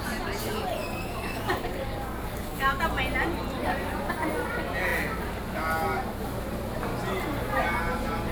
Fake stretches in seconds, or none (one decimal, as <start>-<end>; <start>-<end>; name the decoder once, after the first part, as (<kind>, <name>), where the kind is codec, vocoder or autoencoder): 0.8-2.8 (codec, DAC); 3.6-4.1